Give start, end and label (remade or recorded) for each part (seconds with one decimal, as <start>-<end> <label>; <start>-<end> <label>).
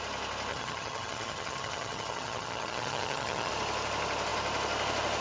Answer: 0.0-0.5 recorded; 0.5-3.5 remade; 3.5-5.2 recorded